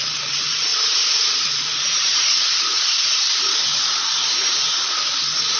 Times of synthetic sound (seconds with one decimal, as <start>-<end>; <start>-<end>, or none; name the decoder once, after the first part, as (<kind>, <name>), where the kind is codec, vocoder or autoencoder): 2.1-2.8 (vocoder, Vocos)